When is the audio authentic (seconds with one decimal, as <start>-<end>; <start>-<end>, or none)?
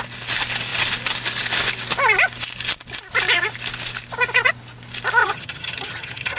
0.0-5.2